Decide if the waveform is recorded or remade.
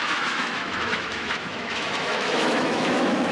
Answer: remade